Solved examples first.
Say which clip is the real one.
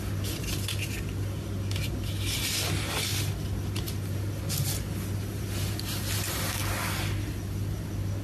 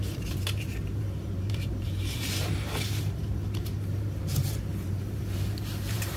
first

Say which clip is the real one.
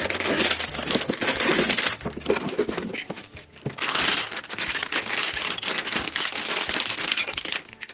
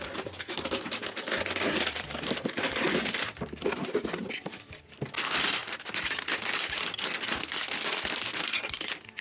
first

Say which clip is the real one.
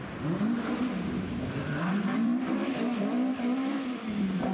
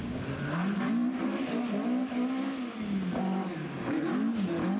second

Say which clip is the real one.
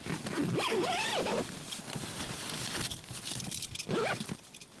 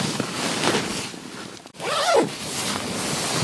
second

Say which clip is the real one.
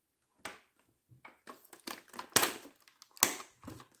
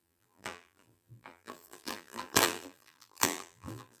first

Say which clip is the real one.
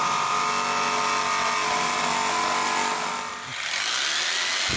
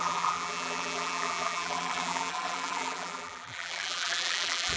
first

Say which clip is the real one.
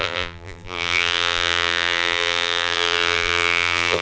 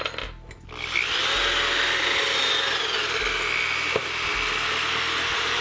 second